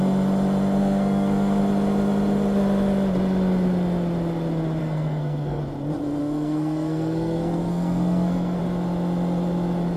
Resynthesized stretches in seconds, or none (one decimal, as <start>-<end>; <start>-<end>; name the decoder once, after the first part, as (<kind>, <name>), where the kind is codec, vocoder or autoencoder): 0.8-1.6 (codec, SNAC); 4.8-5.6; 6.2-8.6